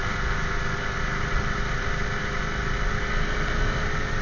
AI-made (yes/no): no